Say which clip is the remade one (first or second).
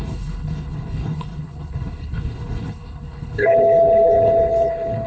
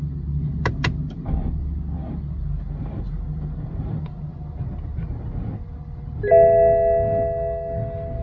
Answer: first